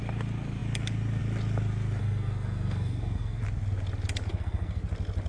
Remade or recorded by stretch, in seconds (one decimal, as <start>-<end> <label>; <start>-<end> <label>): 0.0-2.0 recorded; 2.0-3.4 remade; 3.4-4.3 recorded; 4.3-4.8 remade; 4.8-5.3 recorded